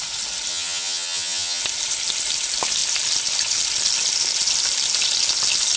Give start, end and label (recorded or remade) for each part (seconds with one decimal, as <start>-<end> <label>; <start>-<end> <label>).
0.0-0.5 recorded; 0.5-1.6 remade; 1.6-5.8 recorded